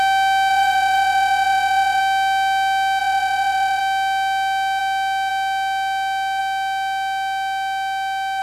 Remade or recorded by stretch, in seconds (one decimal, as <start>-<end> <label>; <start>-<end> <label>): 0.0-0.5 recorded; 0.5-2.0 remade; 2.0-3.0 recorded; 3.0-3.8 remade; 3.8-8.4 recorded